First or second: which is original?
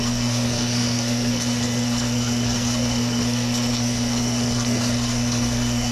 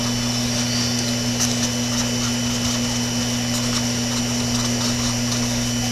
second